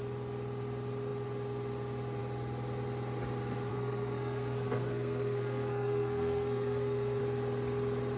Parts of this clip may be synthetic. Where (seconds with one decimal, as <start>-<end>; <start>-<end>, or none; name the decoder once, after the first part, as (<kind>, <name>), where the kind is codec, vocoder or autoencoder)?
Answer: 3.7-7.2 (codec, SNAC)